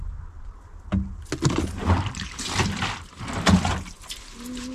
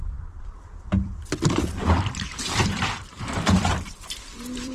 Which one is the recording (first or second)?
first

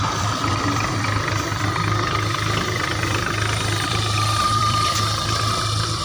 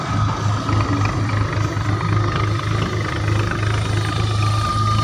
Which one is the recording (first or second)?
second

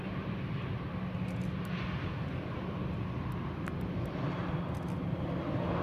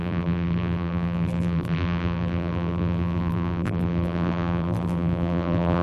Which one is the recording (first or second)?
first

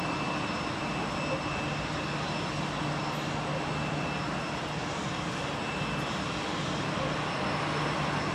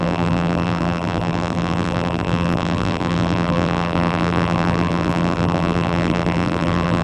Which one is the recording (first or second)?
first